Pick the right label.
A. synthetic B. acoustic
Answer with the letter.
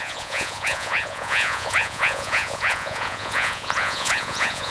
A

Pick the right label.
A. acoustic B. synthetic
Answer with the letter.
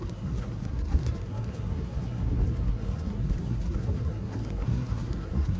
B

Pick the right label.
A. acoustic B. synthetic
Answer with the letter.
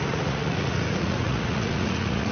B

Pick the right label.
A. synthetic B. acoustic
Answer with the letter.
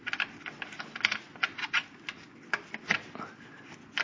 B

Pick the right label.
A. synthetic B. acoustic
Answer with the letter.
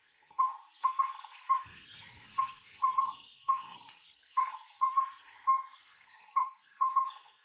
A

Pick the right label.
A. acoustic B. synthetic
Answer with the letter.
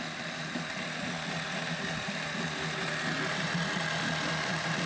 A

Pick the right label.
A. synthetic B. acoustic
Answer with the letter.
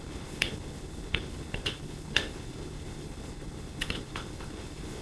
A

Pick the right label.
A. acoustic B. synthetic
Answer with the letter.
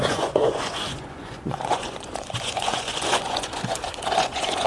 B